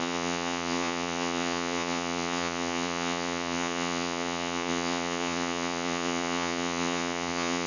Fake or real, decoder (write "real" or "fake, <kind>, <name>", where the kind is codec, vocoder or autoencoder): fake, vocoder, Vocos